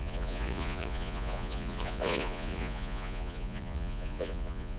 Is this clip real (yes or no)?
no